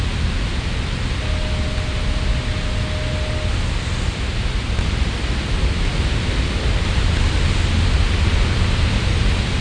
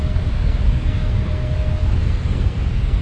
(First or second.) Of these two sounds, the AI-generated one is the second